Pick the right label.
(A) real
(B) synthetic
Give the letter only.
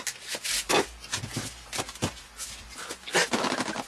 A